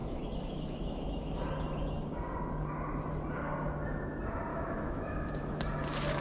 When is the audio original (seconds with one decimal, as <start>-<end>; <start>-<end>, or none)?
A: 1.4-4.5; 5.6-6.2